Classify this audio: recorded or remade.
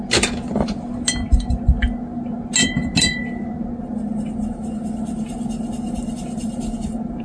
recorded